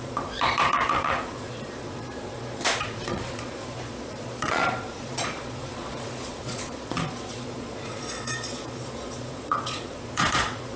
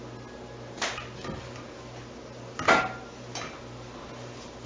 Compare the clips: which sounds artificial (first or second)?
first